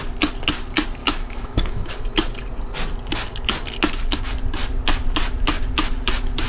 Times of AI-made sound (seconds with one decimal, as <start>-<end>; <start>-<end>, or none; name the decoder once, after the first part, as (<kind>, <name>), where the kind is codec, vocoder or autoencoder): 1.0-1.9 (autoencoder, DAC-VAE)

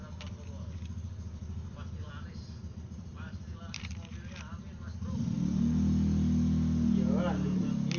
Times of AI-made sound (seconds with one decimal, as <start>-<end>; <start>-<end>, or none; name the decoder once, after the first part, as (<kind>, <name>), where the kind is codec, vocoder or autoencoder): 2.6-3.9 (vocoder, BigVGAN v2)